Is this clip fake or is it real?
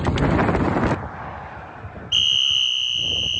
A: real